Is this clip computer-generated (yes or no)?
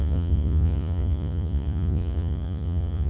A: yes